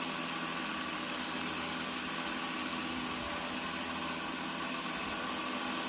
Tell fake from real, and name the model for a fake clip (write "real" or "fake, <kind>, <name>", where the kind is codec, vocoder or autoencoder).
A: real